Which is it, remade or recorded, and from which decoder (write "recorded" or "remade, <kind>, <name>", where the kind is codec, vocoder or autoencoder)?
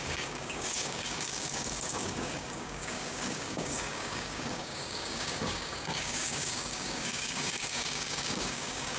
remade, codec, DAC